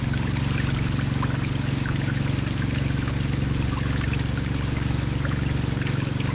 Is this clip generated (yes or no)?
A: no